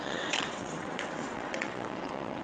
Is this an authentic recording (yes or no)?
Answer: no